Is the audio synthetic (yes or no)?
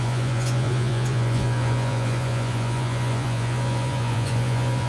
yes